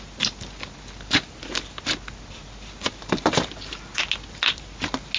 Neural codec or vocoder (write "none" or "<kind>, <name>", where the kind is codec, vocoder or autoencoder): none